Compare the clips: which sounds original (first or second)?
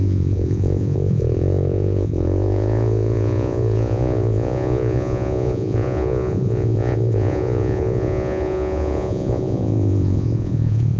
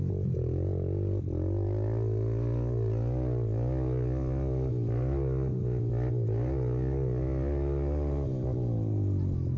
second